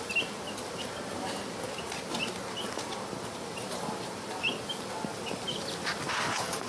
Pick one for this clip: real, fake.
real